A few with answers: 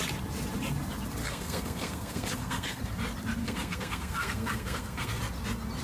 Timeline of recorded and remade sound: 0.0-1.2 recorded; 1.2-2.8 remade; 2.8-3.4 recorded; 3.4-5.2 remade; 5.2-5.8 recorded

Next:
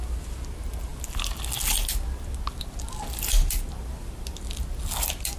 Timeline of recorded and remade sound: 0.0-5.4 recorded

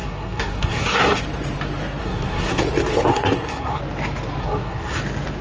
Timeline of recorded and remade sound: 0.0-1.2 remade; 1.2-2.0 recorded; 2.0-2.6 remade; 2.6-3.1 recorded; 3.1-3.8 remade; 3.8-4.4 recorded; 4.4-5.0 remade; 5.0-5.4 recorded

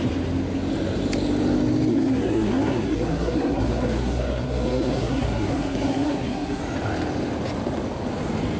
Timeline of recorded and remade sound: 0.0-1.9 recorded; 1.9-6.6 remade; 6.6-8.6 recorded